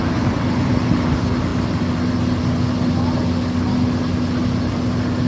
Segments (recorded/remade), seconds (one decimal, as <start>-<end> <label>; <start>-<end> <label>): 0.0-5.3 recorded